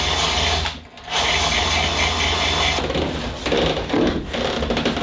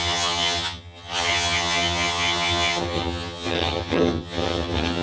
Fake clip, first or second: second